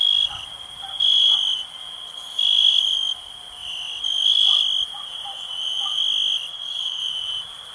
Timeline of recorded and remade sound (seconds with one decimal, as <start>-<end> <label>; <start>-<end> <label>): 0.0-6.5 recorded; 6.5-7.0 remade; 7.0-7.7 recorded